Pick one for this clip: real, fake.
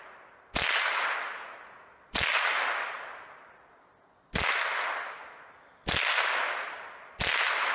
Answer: real